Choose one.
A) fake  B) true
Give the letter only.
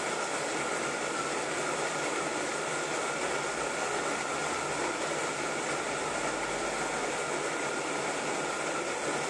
B